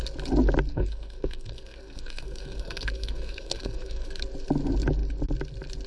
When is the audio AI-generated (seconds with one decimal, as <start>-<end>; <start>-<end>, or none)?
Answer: 0.7-4.2